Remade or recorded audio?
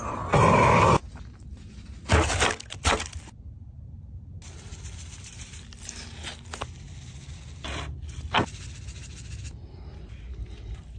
recorded